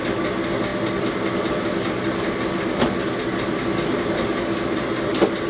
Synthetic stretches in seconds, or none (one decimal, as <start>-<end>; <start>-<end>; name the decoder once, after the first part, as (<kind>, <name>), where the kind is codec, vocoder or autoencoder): none